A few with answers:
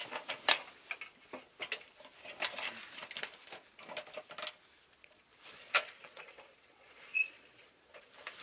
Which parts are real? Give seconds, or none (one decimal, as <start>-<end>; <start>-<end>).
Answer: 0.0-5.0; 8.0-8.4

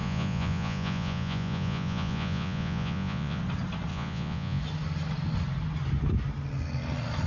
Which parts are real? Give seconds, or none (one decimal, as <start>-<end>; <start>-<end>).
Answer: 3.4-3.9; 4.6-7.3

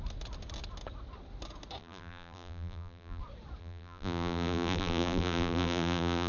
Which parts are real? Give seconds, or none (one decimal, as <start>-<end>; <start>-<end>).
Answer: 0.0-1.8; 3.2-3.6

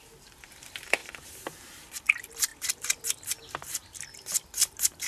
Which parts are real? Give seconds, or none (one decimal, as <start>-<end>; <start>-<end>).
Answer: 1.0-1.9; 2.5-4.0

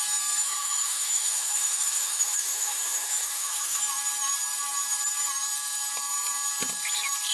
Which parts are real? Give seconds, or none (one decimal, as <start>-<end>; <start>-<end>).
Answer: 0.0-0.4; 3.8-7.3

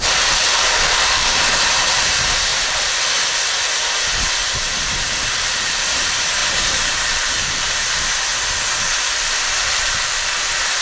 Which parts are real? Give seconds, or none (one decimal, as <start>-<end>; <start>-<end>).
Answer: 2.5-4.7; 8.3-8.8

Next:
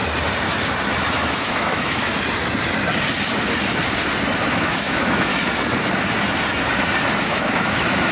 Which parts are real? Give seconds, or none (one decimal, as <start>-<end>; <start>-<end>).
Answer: 0.0-1.1; 2.1-4.5; 5.3-7.2

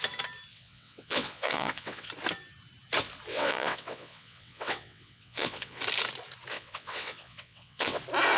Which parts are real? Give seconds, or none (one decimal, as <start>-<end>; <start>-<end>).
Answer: 0.0-0.5; 2.1-3.3; 5.8-6.5; 8.0-8.4